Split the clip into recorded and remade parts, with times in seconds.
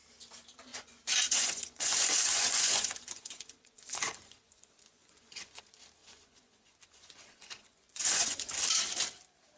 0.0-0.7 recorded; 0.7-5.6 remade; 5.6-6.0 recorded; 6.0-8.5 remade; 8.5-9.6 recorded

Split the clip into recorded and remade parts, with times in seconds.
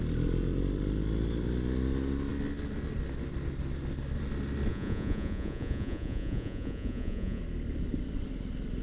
0.0-4.7 recorded; 4.7-7.4 remade; 7.4-8.8 recorded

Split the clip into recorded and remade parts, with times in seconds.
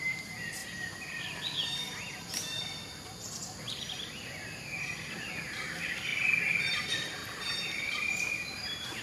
0.0-7.2 recorded; 7.2-9.0 remade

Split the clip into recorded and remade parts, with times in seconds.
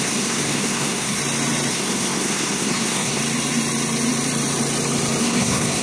0.0-1.2 remade; 1.2-1.7 recorded; 1.7-3.2 remade; 3.2-5.2 recorded; 5.2-5.8 remade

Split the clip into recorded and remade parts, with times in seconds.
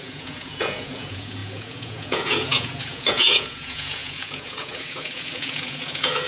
0.0-6.3 remade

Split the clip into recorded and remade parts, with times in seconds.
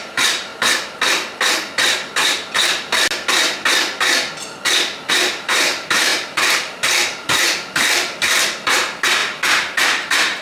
0.0-0.5 remade; 0.5-5.1 recorded; 5.1-10.4 remade